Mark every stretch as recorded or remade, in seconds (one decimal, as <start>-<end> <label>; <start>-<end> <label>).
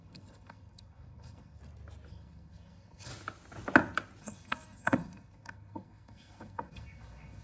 0.0-1.6 remade; 1.6-2.1 recorded; 2.1-3.1 remade; 3.1-4.2 recorded; 4.2-7.4 remade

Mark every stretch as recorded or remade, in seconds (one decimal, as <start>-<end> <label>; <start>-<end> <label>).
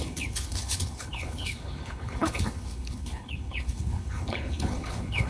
0.0-5.3 remade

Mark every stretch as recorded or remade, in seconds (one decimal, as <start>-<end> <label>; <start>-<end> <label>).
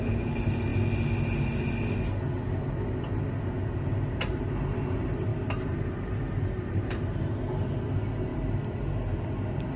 0.0-5.3 recorded; 5.3-7.1 remade; 7.1-9.8 recorded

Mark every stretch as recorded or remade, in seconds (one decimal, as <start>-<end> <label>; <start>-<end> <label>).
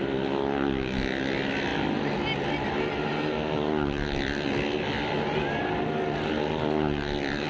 0.0-7.5 recorded